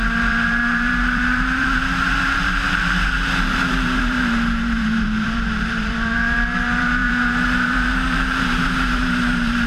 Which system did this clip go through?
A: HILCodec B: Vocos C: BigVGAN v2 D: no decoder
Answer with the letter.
C